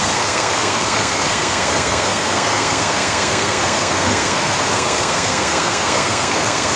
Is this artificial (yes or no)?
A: yes